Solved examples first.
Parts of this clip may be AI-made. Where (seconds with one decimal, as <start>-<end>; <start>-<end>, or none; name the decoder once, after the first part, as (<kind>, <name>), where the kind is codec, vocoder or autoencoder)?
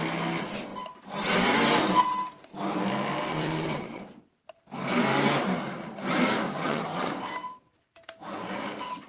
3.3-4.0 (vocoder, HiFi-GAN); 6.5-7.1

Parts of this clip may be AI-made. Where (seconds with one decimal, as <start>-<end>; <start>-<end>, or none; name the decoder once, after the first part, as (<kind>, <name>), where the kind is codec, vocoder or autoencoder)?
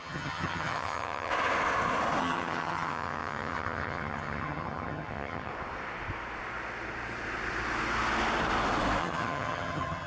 0.0-1.3 (vocoder, HiFi-GAN); 2.2-5.5; 9.0-10.1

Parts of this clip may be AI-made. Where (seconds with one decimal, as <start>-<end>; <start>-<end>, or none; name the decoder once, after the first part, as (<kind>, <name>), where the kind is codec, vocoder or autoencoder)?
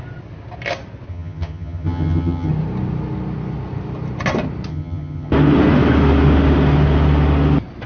1.1-2.5 (vocoder, HiFi-GAN); 4.7-5.3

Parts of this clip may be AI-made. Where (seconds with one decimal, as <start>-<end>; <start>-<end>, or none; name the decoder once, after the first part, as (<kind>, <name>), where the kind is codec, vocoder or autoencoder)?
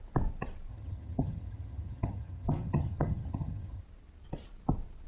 0.7-3.8 (vocoder, HiFi-GAN)